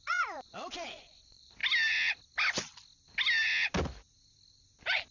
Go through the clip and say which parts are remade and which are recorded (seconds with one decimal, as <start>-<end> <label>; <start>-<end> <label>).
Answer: 0.0-1.6 remade; 1.6-5.1 recorded

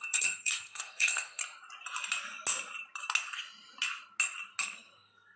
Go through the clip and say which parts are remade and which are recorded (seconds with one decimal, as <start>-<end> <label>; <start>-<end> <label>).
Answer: 0.0-1.4 remade; 1.4-4.6 recorded; 4.6-5.4 remade